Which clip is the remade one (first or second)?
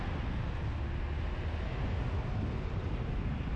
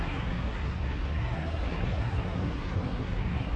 second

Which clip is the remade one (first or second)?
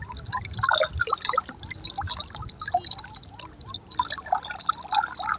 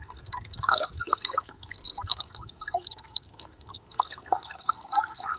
second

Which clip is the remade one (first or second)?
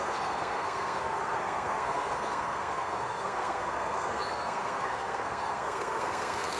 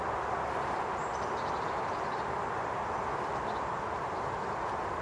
first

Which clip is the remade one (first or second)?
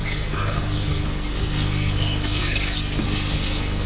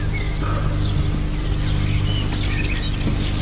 first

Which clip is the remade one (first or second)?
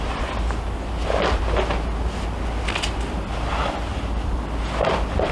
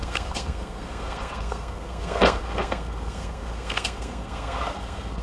second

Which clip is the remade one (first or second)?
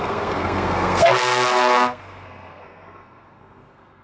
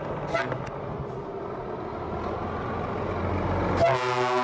first